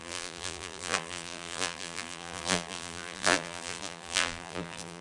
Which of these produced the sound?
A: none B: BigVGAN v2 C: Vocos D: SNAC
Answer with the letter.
B